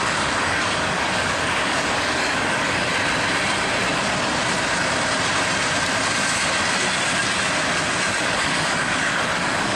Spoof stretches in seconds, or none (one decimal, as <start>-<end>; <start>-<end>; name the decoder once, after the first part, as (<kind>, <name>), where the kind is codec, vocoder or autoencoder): 0.0-2.9 (codec, DAC); 8.1-9.8